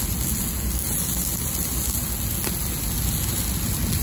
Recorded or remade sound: recorded